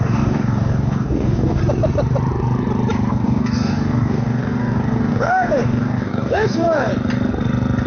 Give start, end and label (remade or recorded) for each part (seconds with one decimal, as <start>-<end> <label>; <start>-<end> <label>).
0.0-1.6 remade; 1.6-3.1 recorded; 3.1-6.9 remade; 6.9-7.9 recorded